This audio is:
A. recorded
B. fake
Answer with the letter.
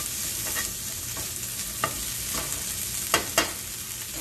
A